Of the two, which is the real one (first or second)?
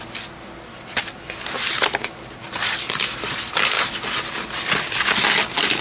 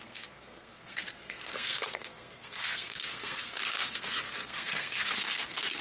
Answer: first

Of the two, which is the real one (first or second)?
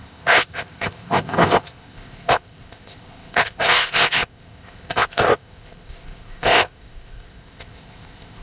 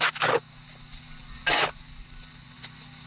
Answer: second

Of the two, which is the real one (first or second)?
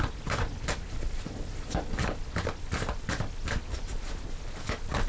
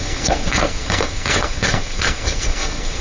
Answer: first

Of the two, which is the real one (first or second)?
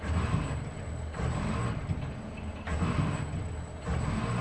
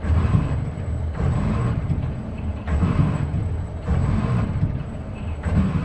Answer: first